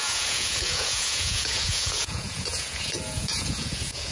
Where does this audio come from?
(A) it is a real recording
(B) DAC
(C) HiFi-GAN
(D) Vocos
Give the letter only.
D